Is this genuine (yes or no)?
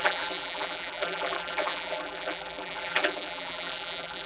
no